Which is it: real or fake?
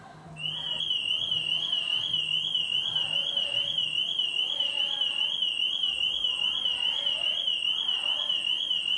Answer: real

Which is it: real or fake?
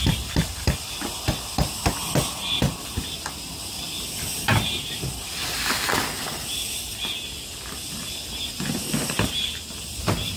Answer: real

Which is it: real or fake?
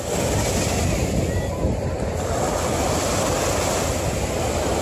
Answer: real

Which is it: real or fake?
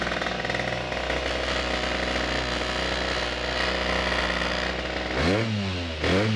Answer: real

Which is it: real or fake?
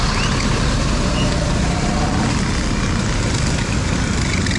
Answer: real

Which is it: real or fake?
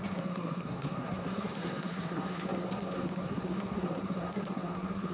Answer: fake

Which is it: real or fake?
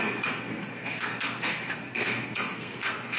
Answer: fake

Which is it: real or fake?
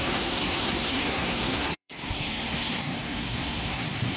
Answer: fake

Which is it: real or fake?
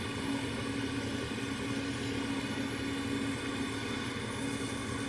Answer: real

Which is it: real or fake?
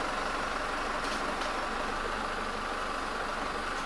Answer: real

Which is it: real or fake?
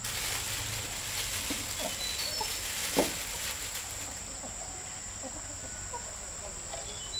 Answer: real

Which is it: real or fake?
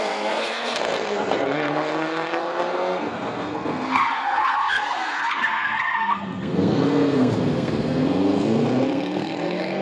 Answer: fake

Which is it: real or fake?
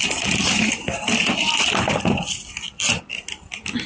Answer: real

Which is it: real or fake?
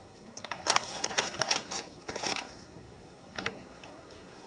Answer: fake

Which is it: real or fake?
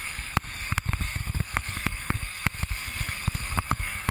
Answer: fake